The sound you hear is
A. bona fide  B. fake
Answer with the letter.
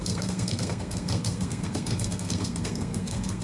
B